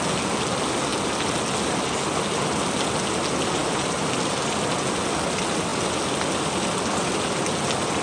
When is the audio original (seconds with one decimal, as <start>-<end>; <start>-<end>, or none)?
0.0-3.6; 4.7-5.7; 7.1-8.0

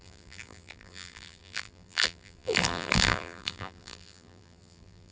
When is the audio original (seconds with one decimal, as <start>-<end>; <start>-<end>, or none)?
none

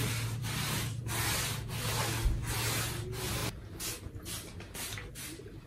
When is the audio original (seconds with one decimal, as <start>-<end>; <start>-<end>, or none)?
0.0-0.4; 1.0-5.7